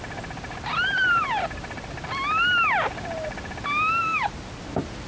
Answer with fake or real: real